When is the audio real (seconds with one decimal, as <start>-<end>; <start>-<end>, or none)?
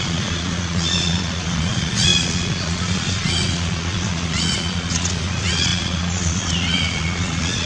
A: none